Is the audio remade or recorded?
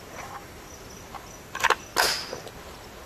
recorded